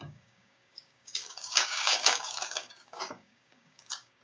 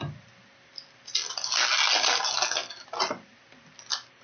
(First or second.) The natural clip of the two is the second